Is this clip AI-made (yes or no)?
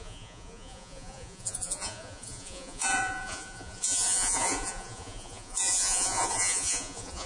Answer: yes